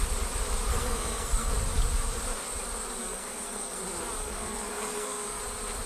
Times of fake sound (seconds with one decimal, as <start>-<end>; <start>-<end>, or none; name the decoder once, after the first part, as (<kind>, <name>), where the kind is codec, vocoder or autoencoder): 0.7-1.5 (codec, SNAC); 3.0-3.8; 4.2-5.4